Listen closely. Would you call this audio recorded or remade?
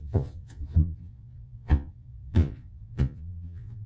remade